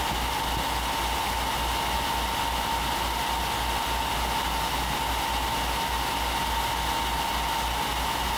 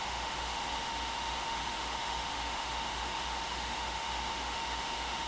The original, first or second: first